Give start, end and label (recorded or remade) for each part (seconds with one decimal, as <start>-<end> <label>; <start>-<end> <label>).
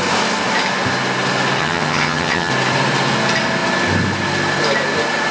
0.0-1.6 recorded; 1.6-2.5 remade; 2.5-5.3 recorded